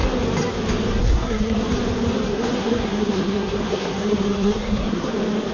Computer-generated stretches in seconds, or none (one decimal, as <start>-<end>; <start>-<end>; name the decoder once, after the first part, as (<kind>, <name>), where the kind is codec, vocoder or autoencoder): 1.0-1.6 (codec, SNAC); 2.3-5.1